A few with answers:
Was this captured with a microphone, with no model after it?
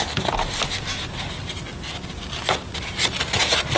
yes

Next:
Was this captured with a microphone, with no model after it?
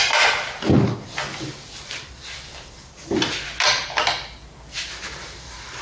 yes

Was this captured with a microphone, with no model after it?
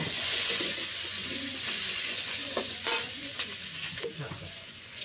no